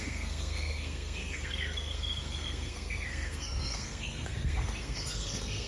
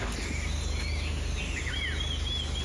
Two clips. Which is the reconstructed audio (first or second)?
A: first